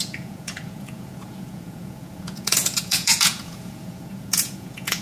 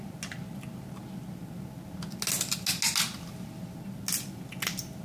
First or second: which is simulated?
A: first